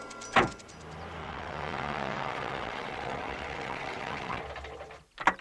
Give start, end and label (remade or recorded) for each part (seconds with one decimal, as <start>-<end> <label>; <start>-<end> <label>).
0.0-1.2 recorded; 1.2-4.4 remade; 4.4-5.4 recorded